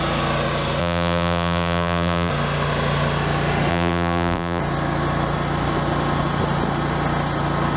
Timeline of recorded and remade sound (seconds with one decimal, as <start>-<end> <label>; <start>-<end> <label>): 0.0-0.8 recorded; 0.8-2.3 remade; 2.3-3.7 recorded; 3.7-4.6 remade; 4.6-7.8 recorded